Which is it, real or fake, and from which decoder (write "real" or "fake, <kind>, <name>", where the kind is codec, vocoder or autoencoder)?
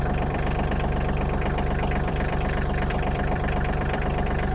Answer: fake, vocoder, BigVGAN v2